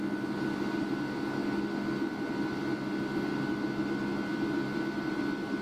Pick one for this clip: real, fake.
real